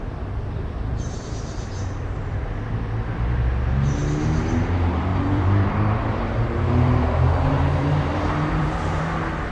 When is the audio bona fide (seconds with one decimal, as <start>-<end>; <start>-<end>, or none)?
0.0-0.9; 2.5-5.1; 9.0-9.5

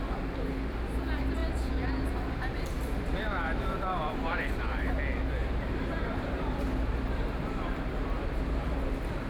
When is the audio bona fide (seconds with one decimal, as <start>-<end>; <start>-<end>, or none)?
0.0-1.4; 4.9-5.4; 8.9-9.3

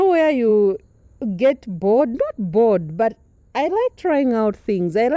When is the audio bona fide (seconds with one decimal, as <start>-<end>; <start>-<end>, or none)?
0.0-0.5; 2.0-3.3; 3.9-5.2

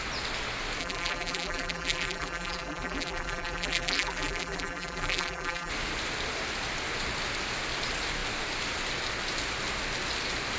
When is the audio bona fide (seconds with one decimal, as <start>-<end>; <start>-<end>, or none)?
0.0-0.8; 5.7-10.6

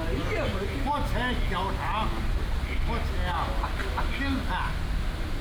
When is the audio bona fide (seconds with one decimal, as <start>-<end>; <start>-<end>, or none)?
0.0-3.8; 4.5-5.4

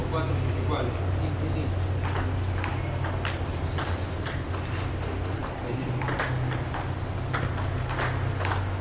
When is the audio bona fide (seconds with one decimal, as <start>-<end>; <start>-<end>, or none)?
0.0-8.8

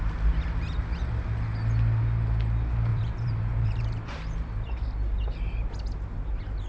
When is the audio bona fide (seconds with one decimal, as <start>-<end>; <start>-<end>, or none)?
0.0-2.9; 5.7-6.7